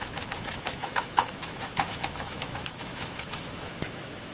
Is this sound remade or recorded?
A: remade